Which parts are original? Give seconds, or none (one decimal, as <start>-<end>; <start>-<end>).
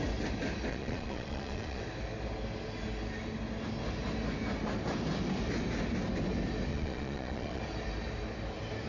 0.0-0.7; 1.8-6.7; 7.6-8.9